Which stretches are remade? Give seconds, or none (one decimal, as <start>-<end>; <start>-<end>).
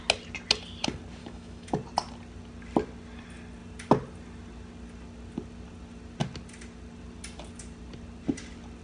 1.2-1.7